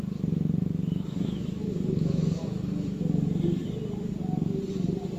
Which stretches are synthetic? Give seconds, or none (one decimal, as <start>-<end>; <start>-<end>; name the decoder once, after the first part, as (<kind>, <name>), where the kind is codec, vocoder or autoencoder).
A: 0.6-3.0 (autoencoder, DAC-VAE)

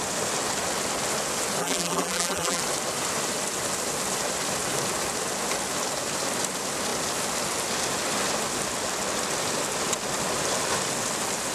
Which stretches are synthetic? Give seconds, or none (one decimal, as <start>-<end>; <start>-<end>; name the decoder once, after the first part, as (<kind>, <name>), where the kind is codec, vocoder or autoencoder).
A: 1.6-2.6 (vocoder, BigVGAN v2)

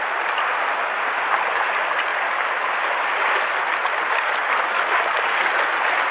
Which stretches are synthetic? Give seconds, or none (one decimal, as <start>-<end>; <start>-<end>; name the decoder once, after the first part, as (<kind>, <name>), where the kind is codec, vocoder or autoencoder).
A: none